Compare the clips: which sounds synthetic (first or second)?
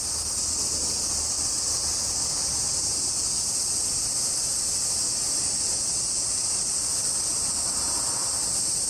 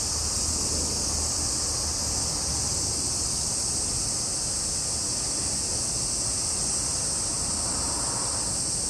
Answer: first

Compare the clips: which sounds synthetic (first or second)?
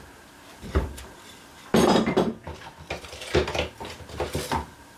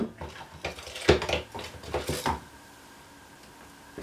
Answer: first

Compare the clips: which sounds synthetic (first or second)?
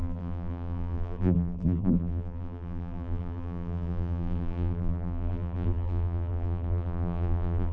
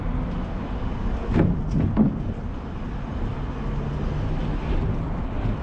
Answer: first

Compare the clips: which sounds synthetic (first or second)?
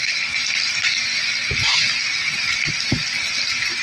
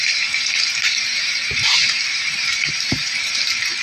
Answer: second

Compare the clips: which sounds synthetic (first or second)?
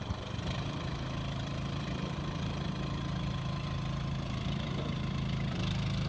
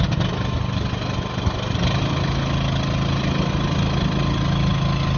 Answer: first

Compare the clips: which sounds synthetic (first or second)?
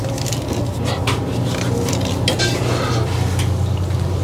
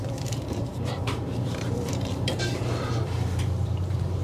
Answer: second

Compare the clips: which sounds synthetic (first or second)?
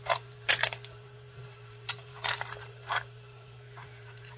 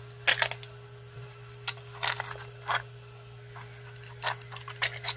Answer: first